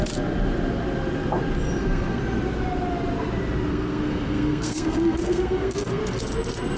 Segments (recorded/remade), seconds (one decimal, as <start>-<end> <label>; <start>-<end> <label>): 0.0-1.8 recorded; 1.8-2.2 remade; 2.2-3.7 recorded; 3.7-6.0 remade; 6.0-6.8 recorded